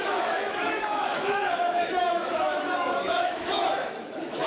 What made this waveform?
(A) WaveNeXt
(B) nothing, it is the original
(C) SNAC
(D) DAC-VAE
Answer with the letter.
D